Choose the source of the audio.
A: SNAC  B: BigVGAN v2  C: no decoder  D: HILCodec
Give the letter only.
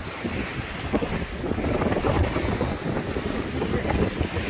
C